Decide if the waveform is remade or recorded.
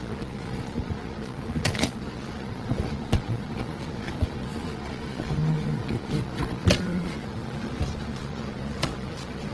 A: remade